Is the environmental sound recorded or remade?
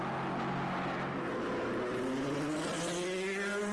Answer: recorded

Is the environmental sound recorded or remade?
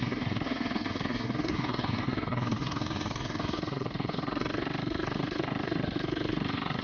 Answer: remade